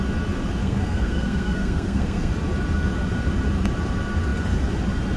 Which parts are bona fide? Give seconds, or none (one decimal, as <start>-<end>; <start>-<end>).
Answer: 0.0-0.6; 2.3-5.2